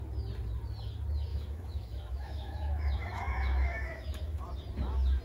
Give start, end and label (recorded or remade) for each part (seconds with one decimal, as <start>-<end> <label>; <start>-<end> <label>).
0.0-1.3 recorded; 1.3-4.4 remade; 4.4-5.2 recorded